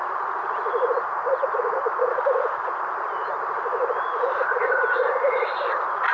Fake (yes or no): no